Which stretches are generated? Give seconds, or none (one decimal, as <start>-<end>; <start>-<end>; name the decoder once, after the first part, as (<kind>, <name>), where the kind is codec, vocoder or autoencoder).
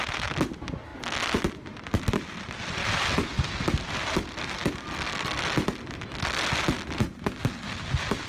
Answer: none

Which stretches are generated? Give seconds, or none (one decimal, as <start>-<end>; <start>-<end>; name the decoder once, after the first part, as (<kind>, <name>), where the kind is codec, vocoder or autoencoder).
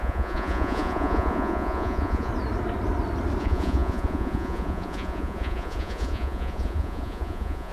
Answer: 0.0-2.3 (vocoder, Vocos); 3.4-7.7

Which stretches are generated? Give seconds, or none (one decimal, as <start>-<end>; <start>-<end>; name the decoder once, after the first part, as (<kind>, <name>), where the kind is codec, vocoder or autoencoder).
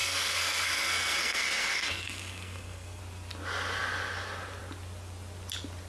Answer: 0.0-3.0 (codec, SNAC)